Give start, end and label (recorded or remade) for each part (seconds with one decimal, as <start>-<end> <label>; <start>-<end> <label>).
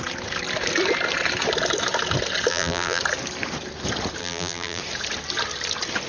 0.0-2.5 recorded; 2.5-3.0 remade; 3.0-4.2 recorded; 4.2-4.8 remade; 4.8-6.1 recorded